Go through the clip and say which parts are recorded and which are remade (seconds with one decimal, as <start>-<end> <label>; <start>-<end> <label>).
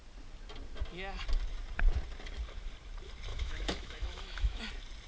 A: 0.0-3.3 recorded; 3.3-4.6 remade; 4.6-5.1 recorded